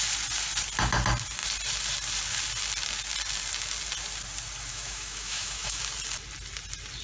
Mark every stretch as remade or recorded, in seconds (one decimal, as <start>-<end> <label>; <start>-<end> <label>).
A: 0.0-4.7 recorded; 4.7-5.8 remade; 5.8-7.0 recorded